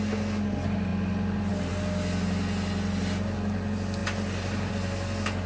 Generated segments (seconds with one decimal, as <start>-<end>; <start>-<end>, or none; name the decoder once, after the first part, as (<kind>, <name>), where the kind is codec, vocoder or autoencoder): none